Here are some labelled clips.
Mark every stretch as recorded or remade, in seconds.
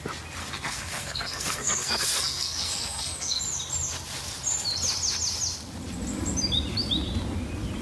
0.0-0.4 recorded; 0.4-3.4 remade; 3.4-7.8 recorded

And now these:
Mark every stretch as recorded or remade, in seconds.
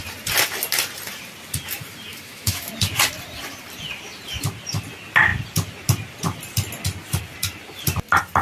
0.0-2.1 recorded; 2.1-2.7 remade; 2.7-8.4 recorded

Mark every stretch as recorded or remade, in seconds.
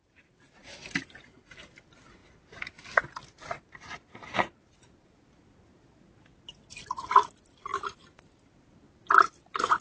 0.0-9.8 recorded